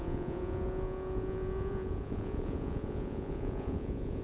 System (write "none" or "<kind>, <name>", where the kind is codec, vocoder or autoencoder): vocoder, Vocos